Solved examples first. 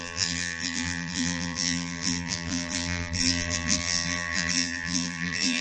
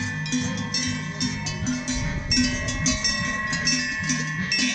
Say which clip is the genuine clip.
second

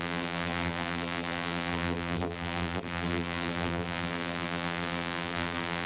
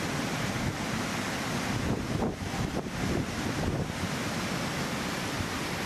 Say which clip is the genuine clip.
second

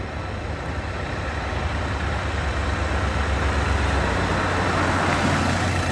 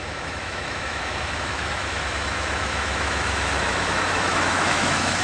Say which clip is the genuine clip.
first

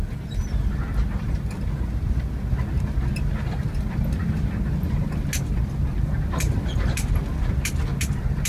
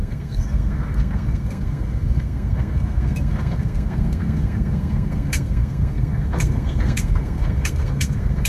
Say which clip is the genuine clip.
first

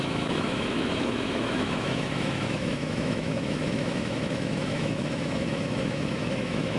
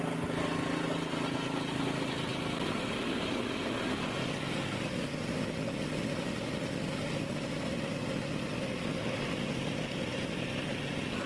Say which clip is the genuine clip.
second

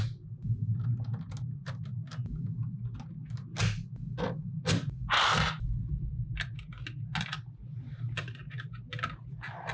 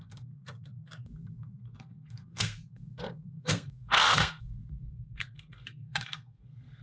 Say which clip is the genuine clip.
first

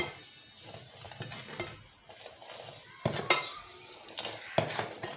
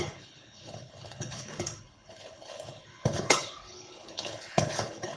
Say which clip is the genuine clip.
first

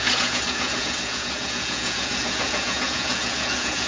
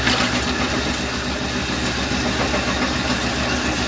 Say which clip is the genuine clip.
second